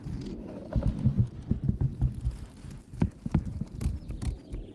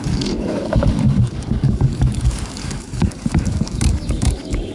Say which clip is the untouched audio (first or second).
first